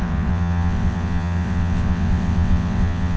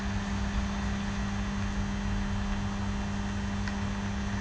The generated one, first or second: first